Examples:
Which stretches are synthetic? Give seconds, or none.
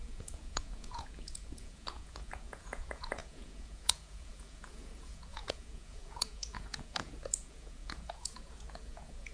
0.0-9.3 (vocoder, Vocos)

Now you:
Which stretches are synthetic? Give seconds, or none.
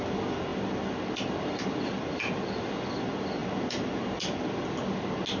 none